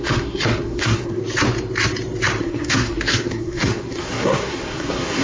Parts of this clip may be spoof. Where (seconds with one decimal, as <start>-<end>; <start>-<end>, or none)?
0.0-1.2; 2.4-5.2

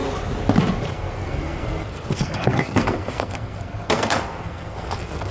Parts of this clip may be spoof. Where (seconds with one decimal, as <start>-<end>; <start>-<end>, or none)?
0.9-5.3

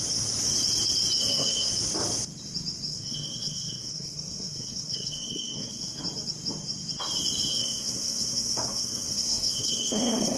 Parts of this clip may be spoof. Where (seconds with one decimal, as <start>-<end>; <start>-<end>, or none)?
1.2-1.7; 2.9-6.0; 7.5-10.4